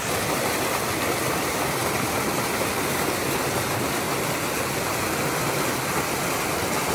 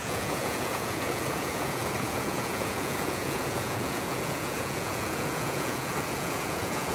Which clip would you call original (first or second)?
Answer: first